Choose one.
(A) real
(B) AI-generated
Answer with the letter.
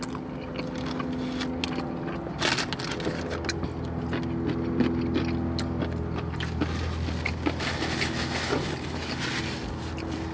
A